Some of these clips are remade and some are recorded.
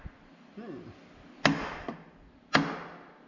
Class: recorded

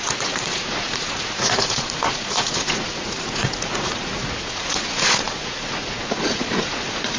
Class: remade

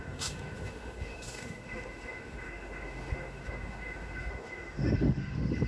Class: remade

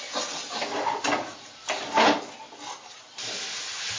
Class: recorded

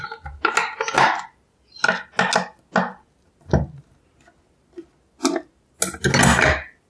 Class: recorded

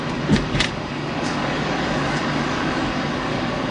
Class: remade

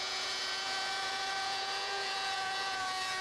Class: remade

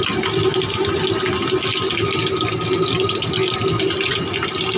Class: recorded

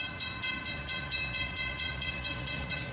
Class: remade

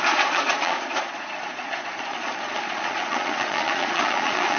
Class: remade